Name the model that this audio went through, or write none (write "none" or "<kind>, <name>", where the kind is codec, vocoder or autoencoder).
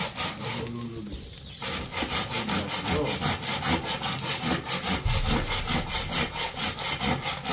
none